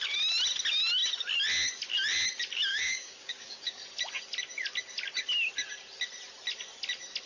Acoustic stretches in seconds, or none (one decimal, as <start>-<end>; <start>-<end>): 0.0-2.7; 3.8-7.3